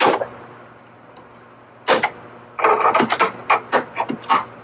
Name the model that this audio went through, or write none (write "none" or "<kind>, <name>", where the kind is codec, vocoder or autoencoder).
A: none